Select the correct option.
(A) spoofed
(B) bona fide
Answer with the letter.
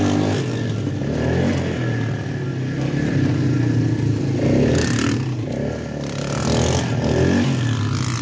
B